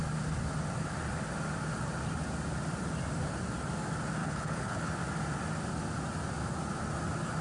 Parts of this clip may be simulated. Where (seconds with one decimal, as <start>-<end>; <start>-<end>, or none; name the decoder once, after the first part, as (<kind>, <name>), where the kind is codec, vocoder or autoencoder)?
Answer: 4.2-4.9 (codec, HILCodec)

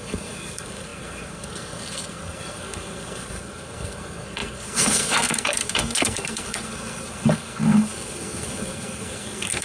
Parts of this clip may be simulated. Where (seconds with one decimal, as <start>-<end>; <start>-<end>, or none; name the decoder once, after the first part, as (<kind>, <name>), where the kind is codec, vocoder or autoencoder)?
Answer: 0.0-9.6 (codec, SNAC)

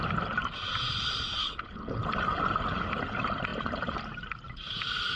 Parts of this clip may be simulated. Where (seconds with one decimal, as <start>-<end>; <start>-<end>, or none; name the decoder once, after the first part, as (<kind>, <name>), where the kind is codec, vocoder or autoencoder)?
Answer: 1.4-2.0 (codec, HILCodec)

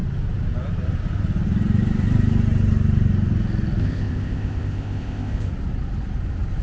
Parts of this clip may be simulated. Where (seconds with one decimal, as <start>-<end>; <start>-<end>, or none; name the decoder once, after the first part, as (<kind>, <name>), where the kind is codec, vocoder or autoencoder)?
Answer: 3.8-5.5 (codec, ZipCodec)